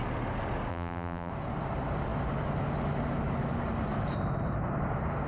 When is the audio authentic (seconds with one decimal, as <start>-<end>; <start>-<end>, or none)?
0.0-0.7; 1.3-5.3